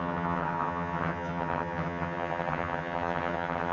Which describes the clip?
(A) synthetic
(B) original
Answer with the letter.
A